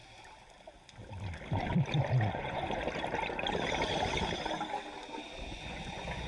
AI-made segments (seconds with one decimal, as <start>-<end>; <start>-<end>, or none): 2.3-2.8; 5.5-6.3